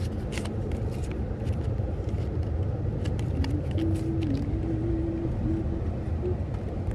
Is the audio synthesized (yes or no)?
no